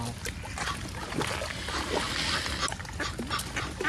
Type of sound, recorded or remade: recorded